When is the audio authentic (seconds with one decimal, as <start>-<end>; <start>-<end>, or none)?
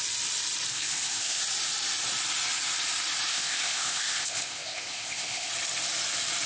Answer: 0.0-0.7; 1.4-3.3; 5.5-6.5